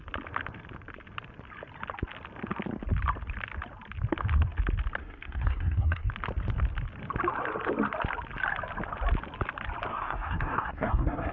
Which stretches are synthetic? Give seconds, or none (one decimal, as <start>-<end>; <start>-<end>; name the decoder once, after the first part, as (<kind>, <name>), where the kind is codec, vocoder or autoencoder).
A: 5.0-6.1 (codec, SNAC); 9.9-11.3

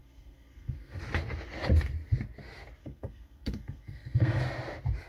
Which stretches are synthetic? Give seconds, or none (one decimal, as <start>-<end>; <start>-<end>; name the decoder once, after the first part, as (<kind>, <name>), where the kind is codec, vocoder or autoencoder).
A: 0.0-1.0 (codec, SNAC); 2.8-4.4